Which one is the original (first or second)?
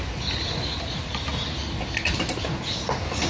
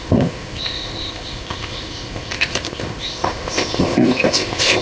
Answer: first